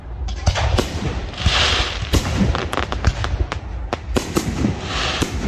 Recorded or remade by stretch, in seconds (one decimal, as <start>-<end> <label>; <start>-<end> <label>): 0.0-2.6 remade; 2.6-4.8 recorded; 4.8-5.5 remade